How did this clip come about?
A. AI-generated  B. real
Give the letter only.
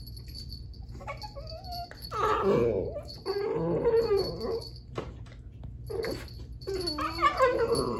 B